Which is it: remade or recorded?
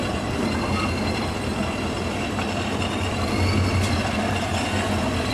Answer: recorded